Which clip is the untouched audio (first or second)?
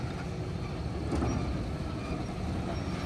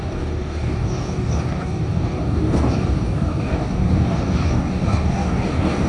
first